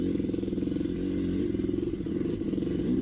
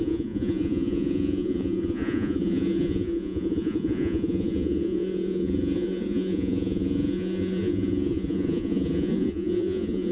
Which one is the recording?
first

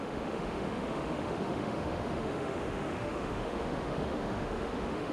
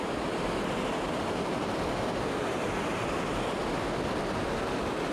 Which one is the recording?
second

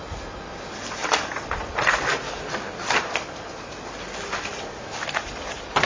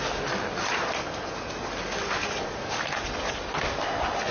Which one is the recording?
second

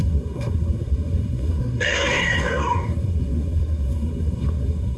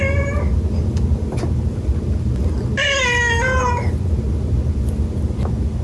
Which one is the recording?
second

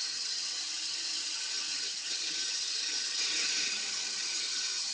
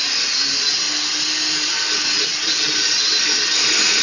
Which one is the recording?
second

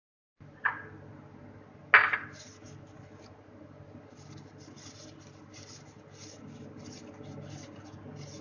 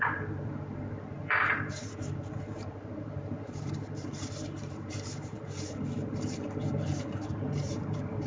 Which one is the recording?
first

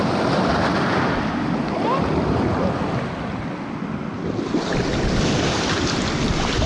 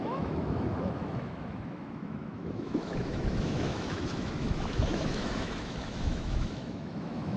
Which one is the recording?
first